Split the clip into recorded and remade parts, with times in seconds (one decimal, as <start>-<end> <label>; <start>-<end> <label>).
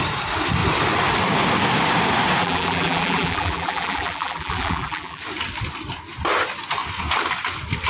0.0-2.4 recorded; 2.4-5.2 remade; 5.2-7.9 recorded